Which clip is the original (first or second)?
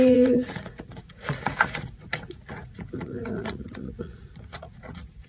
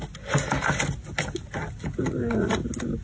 second